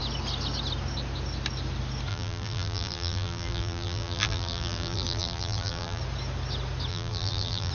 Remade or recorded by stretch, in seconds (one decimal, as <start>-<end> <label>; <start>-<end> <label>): 0.0-2.1 recorded; 2.1-6.0 remade; 6.0-6.9 recorded; 6.9-7.7 remade